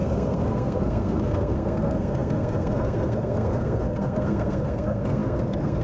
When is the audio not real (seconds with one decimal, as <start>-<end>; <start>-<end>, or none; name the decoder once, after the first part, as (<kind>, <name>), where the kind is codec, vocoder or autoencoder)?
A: 0.0-5.8 (codec, SNAC)